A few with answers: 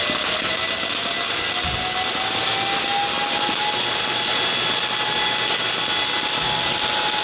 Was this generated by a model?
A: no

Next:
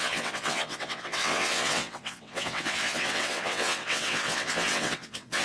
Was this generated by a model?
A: yes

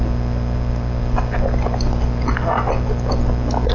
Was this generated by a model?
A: no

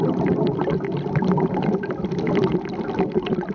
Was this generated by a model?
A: no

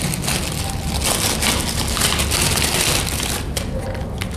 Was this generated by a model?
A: no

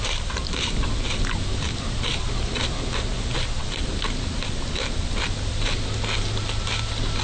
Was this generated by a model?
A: no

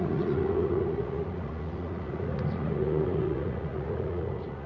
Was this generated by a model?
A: yes